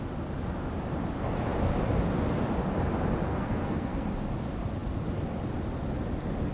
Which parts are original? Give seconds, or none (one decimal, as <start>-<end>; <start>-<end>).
0.0-3.3; 4.1-6.5